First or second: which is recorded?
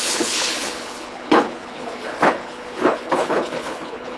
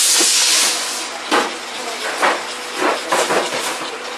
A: second